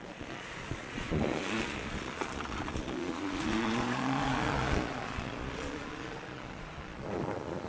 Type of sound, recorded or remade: remade